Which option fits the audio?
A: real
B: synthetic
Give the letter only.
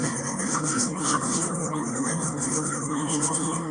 B